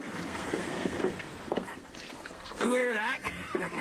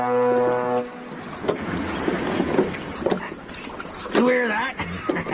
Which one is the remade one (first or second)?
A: first